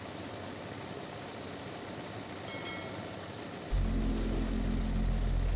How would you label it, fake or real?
real